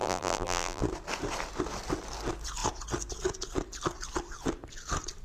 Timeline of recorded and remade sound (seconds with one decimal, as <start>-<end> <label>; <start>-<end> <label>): 0.0-0.8 remade; 0.8-5.2 recorded